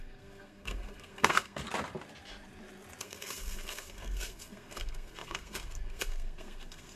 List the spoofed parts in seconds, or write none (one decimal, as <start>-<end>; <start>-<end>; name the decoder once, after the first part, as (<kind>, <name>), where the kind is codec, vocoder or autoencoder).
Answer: 0.0-1.6 (codec, SNAC); 3.0-7.0